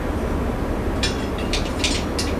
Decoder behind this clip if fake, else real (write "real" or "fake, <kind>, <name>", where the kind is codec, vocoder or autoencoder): real